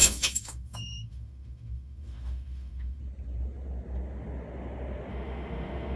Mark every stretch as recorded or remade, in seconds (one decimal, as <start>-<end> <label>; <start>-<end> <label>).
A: 0.0-3.0 remade; 3.0-5.1 recorded; 5.1-6.0 remade